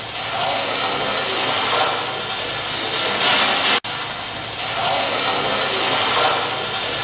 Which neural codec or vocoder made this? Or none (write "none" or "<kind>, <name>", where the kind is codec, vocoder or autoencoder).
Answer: none